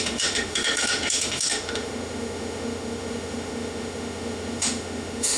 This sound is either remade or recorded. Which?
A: remade